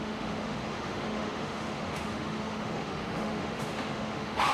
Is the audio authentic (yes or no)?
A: no